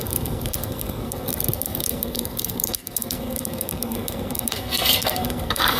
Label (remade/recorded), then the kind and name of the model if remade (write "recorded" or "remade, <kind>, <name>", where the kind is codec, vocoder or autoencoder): remade, codec, SNAC